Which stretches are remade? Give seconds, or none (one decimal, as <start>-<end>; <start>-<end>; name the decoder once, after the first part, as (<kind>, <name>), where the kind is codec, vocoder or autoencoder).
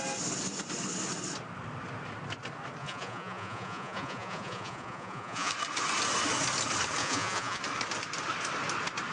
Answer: 2.8-5.5 (vocoder, Vocos); 7.0-7.6